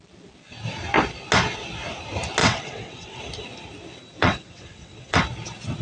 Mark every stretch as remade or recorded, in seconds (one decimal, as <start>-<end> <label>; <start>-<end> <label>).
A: 0.0-2.4 recorded; 2.4-3.2 remade; 3.2-4.2 recorded; 4.2-5.2 remade; 5.2-5.8 recorded